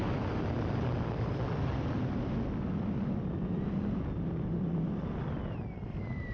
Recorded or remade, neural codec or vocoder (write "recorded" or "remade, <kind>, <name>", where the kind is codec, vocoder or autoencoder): remade, vocoder, BigVGAN v2